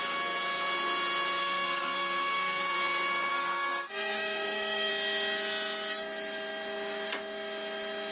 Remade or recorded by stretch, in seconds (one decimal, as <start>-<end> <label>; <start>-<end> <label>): 0.0-1.4 recorded; 1.4-2.8 remade; 2.8-3.3 recorded; 3.3-4.9 remade; 4.9-8.1 recorded